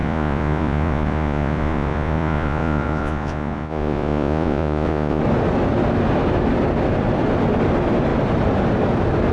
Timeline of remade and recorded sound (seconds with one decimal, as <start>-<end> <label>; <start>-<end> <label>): 0.0-5.2 remade; 5.2-9.3 recorded